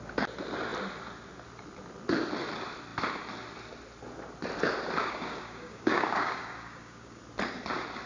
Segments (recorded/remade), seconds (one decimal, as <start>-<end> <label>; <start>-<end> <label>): 0.0-5.0 recorded; 5.0-7.2 remade; 7.2-8.1 recorded